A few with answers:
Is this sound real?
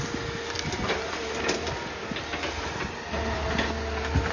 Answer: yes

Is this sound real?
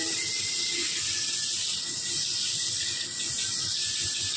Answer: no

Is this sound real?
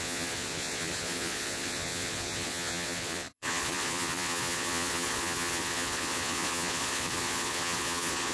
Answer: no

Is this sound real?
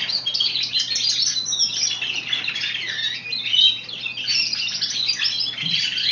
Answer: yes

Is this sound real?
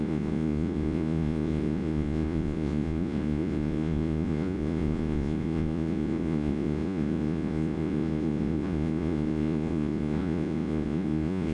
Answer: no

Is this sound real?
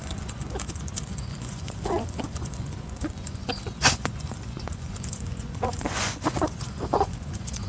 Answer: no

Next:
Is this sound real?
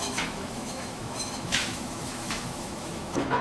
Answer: no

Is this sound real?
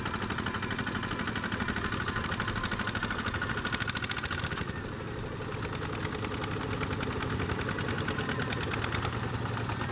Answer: yes